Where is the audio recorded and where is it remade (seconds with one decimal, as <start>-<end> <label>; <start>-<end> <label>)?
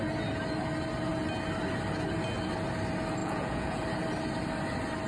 0.0-3.2 recorded; 3.2-3.8 remade; 3.8-5.1 recorded